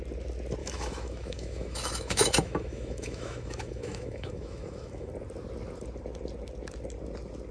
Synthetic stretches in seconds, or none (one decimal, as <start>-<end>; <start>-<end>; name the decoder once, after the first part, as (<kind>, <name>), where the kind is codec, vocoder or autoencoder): 0.6-5.1 (autoencoder, DAC-VAE)